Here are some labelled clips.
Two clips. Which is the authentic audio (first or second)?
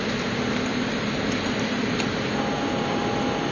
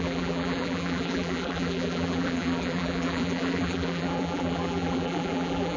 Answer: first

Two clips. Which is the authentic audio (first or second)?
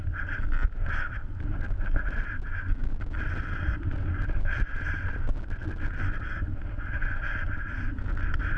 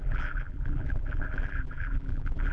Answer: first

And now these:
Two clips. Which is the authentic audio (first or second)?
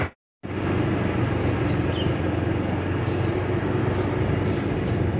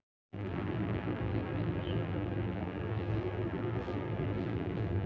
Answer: first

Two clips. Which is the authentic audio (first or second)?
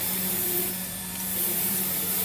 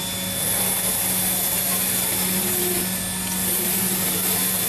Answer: second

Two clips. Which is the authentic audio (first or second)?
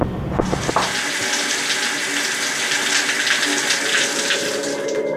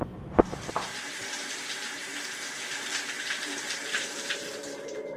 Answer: first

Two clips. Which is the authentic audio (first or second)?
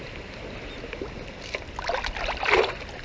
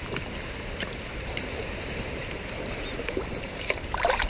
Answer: first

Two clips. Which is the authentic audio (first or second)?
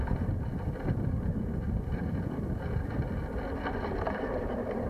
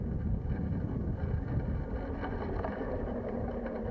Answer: second